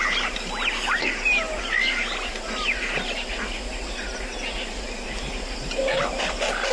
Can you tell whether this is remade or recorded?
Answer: recorded